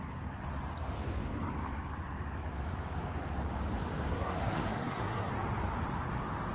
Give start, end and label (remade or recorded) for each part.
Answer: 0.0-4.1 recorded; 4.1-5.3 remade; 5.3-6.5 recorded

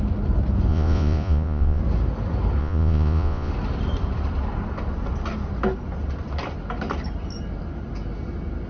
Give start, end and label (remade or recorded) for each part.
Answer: 0.0-0.7 recorded; 0.7-1.8 remade; 1.8-2.6 recorded; 2.6-3.5 remade; 3.5-8.7 recorded

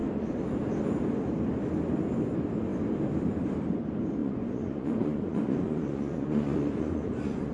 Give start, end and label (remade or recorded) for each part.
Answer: 0.0-4.2 recorded; 4.2-7.5 remade

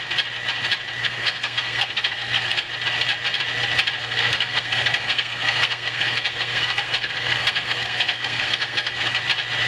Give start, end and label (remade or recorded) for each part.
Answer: 0.0-1.0 recorded; 1.0-2.7 remade; 2.7-4.0 recorded; 4.0-9.2 remade; 9.2-9.7 recorded

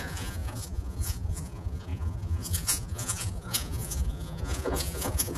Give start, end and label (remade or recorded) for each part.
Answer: 0.0-5.4 remade

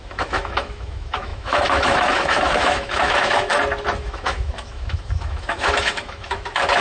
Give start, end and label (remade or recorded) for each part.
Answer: 0.0-3.5 remade; 3.5-4.0 recorded; 4.0-6.8 remade